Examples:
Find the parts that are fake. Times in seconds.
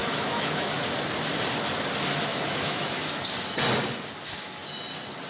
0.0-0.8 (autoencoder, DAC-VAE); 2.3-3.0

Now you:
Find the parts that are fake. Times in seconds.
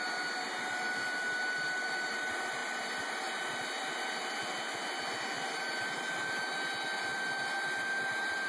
none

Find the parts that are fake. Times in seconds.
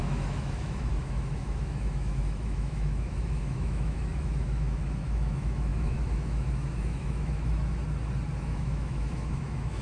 0.0-7.8 (autoencoder, DAC-VAE); 8.4-9.8